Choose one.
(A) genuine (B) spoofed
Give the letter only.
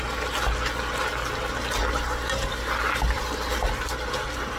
A